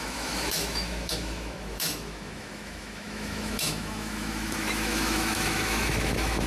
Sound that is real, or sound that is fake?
fake